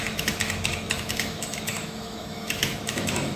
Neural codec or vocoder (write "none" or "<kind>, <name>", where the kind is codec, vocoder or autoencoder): autoencoder, DAC-VAE